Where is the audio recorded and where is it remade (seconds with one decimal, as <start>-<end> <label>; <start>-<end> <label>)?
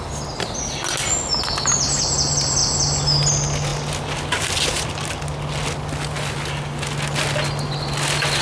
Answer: 0.0-8.4 recorded